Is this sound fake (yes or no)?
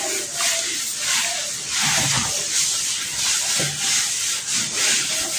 no